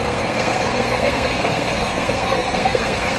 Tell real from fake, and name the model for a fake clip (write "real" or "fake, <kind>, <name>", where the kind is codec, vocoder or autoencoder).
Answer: fake, codec, SNAC